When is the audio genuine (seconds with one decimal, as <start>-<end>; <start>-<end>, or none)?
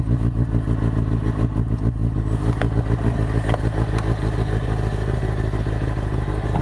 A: 0.0-6.6